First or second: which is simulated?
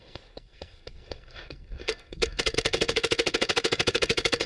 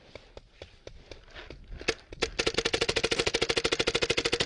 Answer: first